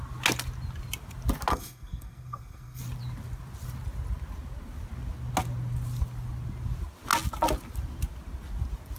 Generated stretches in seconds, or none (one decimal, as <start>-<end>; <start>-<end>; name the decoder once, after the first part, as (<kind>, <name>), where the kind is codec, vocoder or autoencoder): 1.5-2.8 (codec, SNAC)